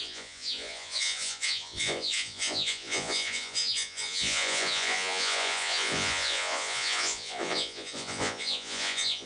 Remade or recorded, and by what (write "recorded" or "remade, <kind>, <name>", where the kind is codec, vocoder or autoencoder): remade, vocoder, Vocos